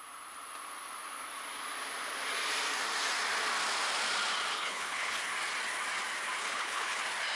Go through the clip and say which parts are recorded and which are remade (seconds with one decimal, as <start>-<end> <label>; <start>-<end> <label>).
0.0-4.5 recorded; 4.5-5.2 remade; 5.2-6.4 recorded; 6.4-7.0 remade; 7.0-7.4 recorded